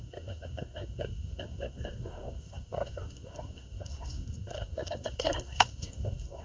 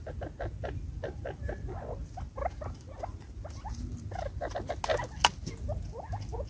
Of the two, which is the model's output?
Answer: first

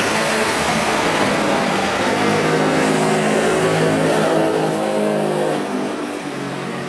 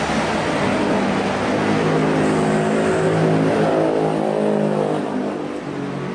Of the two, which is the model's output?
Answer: first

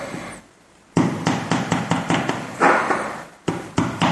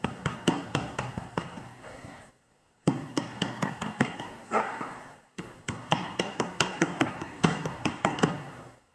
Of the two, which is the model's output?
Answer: second